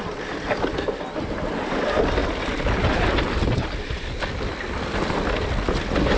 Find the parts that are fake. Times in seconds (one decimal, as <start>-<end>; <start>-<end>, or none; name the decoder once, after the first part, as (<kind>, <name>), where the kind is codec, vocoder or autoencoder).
none

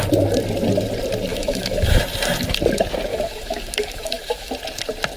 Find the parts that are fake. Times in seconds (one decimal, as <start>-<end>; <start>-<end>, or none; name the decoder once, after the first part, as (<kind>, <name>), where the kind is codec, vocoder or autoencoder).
1.3-2.0 (autoencoder, DAC-VAE); 3.1-4.5

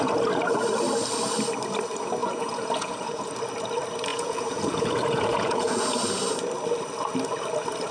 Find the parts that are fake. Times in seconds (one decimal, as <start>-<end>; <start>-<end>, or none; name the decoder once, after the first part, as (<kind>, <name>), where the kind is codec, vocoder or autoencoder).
2.2-3.3 (vocoder, Vocos); 4.1-5.8

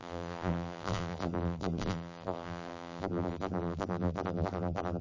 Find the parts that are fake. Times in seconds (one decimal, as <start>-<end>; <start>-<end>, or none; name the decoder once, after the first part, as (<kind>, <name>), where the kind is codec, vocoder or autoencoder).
0.0-5.0 (vocoder, BigVGAN v2)

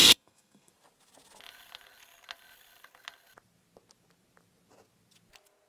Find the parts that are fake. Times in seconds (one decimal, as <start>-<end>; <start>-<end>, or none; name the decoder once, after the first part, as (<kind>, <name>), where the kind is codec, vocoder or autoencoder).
0.0-0.7 (codec, SNAC)

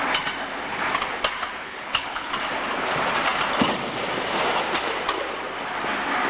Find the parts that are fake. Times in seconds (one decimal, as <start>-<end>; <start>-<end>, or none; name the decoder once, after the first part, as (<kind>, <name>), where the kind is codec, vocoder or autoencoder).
1.6-2.3 (codec, HILCodec)

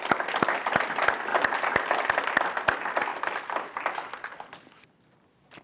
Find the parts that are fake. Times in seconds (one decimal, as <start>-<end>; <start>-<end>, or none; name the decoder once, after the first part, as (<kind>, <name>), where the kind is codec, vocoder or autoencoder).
none